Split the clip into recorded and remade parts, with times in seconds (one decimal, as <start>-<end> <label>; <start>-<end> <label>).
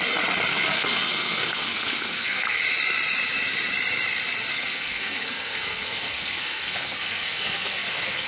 0.0-0.5 recorded; 0.5-2.6 remade; 2.6-4.5 recorded; 4.5-8.3 remade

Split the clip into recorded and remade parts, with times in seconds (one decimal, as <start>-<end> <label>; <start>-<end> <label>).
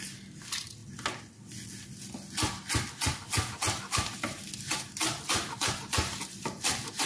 0.0-0.8 remade; 0.8-5.0 recorded; 5.0-7.1 remade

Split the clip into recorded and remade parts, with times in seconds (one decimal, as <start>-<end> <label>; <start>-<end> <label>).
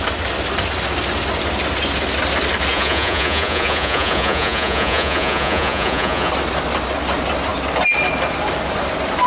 0.0-2.7 recorded; 2.7-6.3 remade; 6.3-9.3 recorded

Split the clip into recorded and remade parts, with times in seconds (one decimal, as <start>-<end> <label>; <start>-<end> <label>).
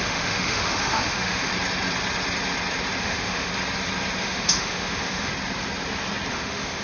0.0-1.5 remade; 1.5-3.0 recorded; 3.0-3.5 remade; 3.5-4.2 recorded; 4.2-5.3 remade; 5.3-6.3 recorded; 6.3-6.8 remade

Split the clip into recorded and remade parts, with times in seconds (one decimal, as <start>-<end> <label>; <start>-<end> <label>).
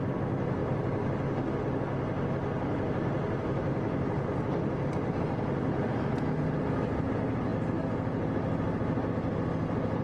0.0-10.0 recorded